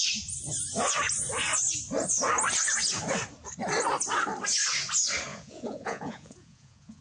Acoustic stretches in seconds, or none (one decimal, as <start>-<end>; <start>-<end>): 0.0-5.3